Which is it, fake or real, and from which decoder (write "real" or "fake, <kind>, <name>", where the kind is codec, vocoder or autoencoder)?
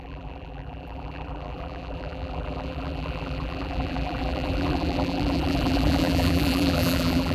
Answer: fake, vocoder, BigVGAN v2